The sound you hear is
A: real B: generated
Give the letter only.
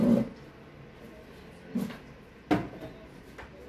A